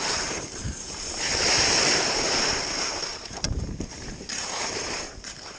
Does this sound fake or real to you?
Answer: fake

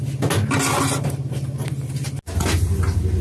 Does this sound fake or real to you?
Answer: real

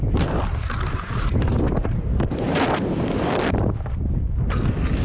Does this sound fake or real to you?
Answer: real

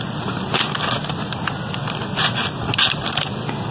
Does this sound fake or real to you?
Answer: real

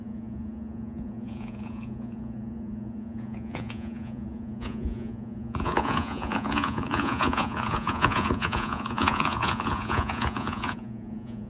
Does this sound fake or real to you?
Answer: fake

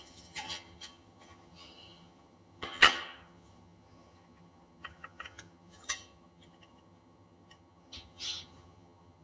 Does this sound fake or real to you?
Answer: fake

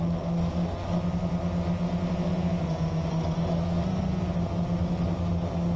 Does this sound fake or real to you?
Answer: real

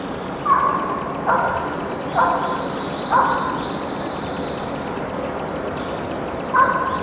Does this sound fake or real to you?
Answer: real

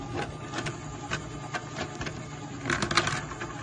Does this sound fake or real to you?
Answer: real